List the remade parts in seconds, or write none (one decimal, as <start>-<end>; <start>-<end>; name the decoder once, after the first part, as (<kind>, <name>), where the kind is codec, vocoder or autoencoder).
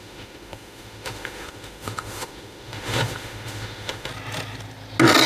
0.0-4.1 (autoencoder, DAC-VAE)